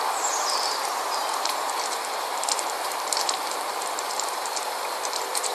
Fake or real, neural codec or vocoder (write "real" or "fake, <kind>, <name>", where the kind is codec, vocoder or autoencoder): fake, vocoder, BigVGAN v2